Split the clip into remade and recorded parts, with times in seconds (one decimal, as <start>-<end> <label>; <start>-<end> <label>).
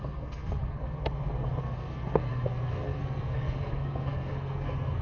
0.0-5.0 remade